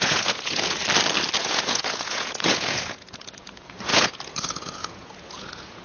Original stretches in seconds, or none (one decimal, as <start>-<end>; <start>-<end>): 0.8-1.4